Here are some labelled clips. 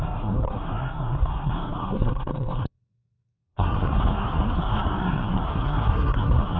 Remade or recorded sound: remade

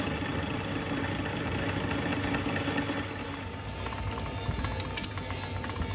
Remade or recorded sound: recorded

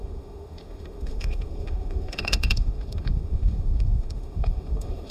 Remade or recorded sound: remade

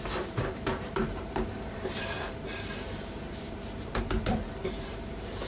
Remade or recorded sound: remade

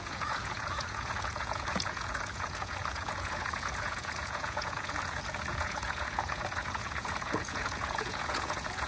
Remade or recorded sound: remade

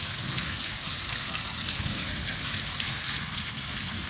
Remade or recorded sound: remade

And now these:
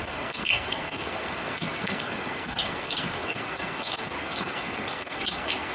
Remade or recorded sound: remade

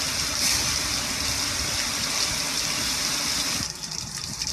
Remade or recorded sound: recorded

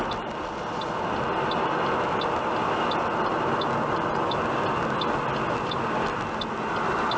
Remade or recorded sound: recorded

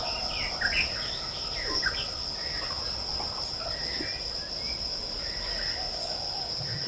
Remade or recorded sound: recorded